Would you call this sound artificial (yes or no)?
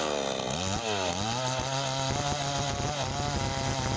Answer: no